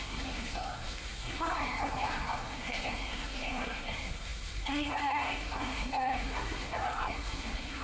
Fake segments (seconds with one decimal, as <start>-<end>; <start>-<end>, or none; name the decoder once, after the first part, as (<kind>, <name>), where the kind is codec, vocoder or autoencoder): 0.0-7.8 (codec, SNAC)